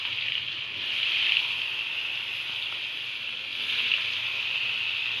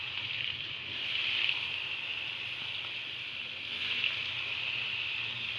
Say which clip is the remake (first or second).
second